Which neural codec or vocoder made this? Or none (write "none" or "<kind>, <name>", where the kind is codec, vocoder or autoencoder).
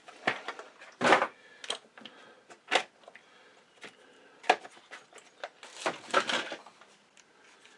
none